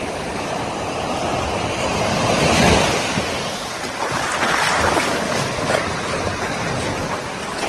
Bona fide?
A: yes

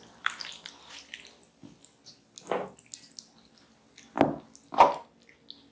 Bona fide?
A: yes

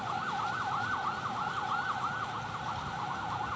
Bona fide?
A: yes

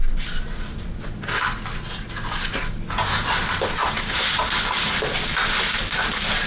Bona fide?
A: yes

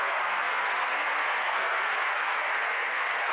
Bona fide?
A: no